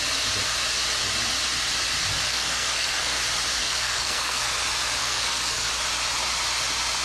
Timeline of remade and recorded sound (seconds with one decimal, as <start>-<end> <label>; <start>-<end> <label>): 0.0-2.3 recorded; 2.3-3.2 remade; 3.2-3.6 recorded; 3.6-4.5 remade; 4.5-5.0 recorded; 5.0-5.7 remade; 5.7-7.0 recorded